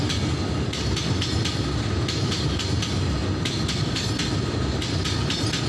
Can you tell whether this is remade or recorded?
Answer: recorded